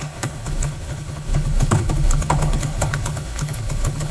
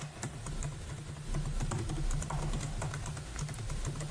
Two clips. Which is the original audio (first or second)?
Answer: second